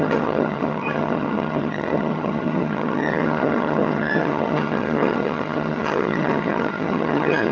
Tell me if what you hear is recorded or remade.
remade